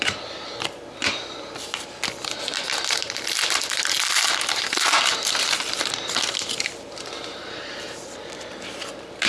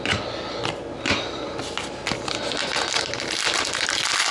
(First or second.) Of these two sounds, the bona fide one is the second